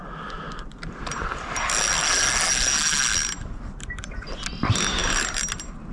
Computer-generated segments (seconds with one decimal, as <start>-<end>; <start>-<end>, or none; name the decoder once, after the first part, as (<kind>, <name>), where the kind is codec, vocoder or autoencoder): none